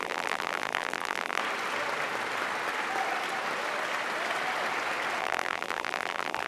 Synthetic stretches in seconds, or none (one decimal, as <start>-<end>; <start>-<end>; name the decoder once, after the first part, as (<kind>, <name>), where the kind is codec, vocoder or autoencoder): 0.0-1.4 (vocoder, BigVGAN v2); 5.2-6.5